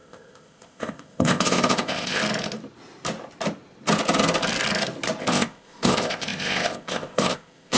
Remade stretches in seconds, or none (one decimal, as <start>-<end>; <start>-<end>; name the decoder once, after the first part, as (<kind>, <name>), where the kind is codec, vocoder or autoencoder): 0.0-2.2 (codec, ZipCodec); 5.2-7.8